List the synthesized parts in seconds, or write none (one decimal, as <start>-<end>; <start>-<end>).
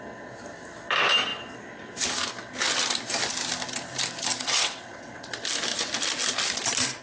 4.3-5.3